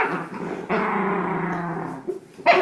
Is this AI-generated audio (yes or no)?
no